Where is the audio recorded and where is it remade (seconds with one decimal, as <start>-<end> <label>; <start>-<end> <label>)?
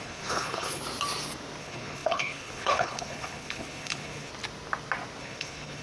0.0-0.8 remade; 0.8-1.6 recorded; 1.6-4.3 remade; 4.3-5.2 recorded; 5.2-5.8 remade